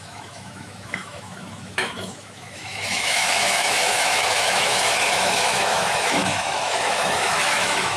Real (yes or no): no